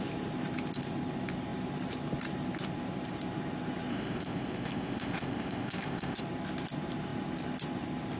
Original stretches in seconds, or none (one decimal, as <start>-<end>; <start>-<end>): 0.0-3.9; 6.2-8.2